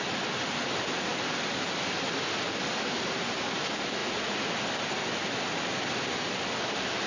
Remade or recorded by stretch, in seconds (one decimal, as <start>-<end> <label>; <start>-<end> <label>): 0.0-4.0 recorded; 4.0-4.5 remade; 4.5-7.1 recorded